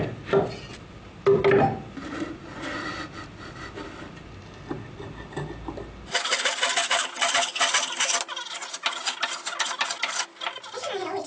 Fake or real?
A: real